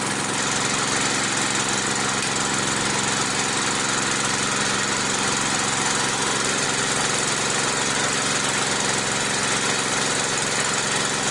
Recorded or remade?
recorded